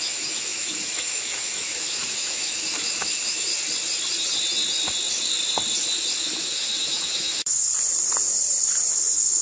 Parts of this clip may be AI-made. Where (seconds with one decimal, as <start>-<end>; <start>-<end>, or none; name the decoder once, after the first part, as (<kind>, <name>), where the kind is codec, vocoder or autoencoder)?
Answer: 0.0-3.5 (autoencoder, DAC-VAE); 6.2-7.7; 8.9-9.4